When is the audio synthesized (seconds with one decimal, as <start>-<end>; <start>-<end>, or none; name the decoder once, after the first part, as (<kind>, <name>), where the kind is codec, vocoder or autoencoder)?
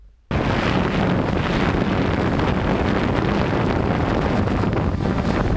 none